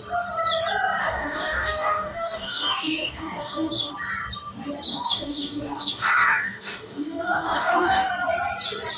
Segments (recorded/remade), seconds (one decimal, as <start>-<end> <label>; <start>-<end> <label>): 0.0-1.0 recorded; 1.0-3.9 remade; 3.9-4.9 recorded; 4.9-8.1 remade; 8.1-9.0 recorded